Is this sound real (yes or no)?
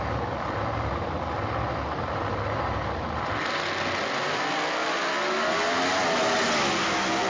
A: yes